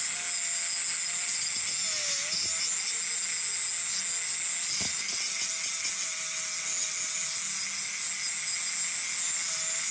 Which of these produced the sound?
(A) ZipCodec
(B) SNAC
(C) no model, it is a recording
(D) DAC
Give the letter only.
C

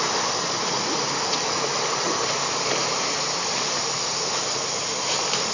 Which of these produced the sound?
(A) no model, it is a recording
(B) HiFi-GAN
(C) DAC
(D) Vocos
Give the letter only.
A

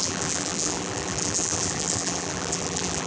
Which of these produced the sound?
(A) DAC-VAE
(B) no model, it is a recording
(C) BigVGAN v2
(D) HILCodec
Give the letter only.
C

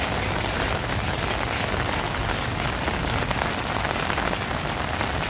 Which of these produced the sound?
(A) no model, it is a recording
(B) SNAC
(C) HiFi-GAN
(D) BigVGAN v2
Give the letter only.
A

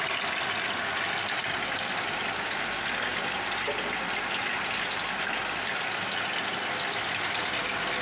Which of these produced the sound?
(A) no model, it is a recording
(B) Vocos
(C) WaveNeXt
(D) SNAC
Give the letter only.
A